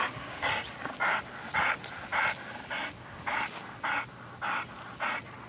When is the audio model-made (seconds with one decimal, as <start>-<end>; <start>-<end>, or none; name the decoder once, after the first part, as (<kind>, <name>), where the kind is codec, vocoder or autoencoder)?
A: none